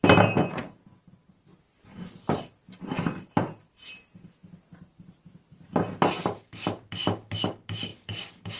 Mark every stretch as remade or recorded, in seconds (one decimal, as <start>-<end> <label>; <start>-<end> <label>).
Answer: 0.0-0.6 recorded; 0.6-1.3 remade; 1.3-1.9 recorded; 1.9-3.3 remade; 3.3-4.7 recorded; 4.7-6.9 remade; 6.9-7.9 recorded; 7.9-8.6 remade